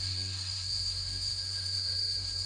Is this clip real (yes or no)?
no